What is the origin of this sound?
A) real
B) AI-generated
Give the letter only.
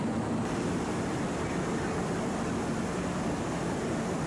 A